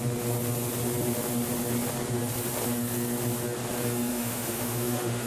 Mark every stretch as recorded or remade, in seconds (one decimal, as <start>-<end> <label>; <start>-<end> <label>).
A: 0.0-4.1 recorded; 4.1-5.3 remade